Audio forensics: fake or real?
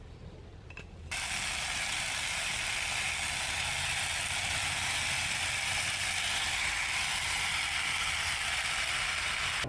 real